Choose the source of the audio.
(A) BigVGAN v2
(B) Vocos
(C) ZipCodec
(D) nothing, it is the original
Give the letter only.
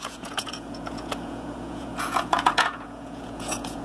B